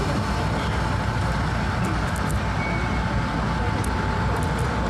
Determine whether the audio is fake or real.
real